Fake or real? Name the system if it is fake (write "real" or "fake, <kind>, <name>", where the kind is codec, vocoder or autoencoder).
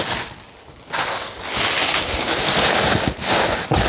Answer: real